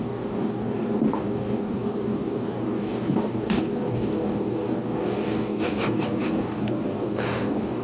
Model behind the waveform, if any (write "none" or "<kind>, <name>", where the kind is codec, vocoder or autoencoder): codec, DAC